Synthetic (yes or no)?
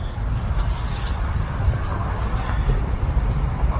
yes